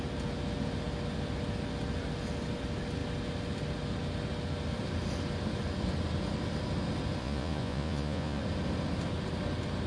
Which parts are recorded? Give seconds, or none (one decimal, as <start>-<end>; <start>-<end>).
0.0-7.2; 8.4-9.9